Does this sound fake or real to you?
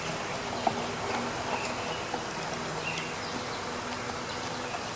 real